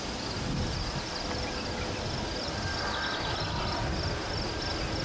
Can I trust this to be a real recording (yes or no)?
yes